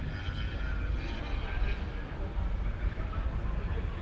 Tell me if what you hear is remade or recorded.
recorded